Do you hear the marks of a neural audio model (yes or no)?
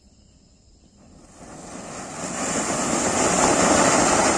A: no